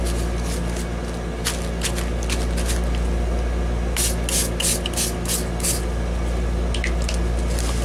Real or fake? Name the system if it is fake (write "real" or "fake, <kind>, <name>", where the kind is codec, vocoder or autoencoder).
real